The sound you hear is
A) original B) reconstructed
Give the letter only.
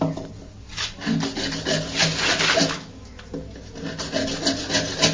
A